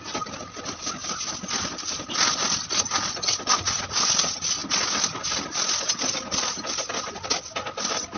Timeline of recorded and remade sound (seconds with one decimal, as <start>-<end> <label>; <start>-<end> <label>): 0.0-8.2 recorded